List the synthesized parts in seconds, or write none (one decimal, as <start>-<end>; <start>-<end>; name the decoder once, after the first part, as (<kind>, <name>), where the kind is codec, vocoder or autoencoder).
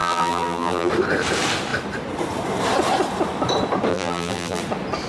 0.0-0.9 (vocoder, BigVGAN v2); 3.9-4.6